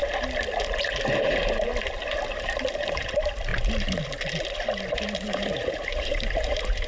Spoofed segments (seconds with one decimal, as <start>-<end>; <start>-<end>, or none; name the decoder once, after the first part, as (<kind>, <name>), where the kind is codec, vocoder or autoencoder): 1.0-1.7 (vocoder, BigVGAN v2); 2.3-3.5; 4.9-6.9